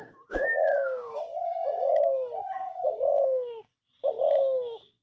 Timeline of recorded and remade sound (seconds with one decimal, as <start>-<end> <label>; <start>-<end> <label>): 0.0-3.7 remade; 3.7-4.3 recorded; 4.3-5.0 remade